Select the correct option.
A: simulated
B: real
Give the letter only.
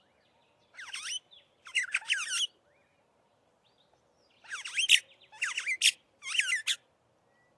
B